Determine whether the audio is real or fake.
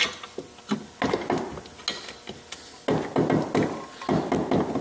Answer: real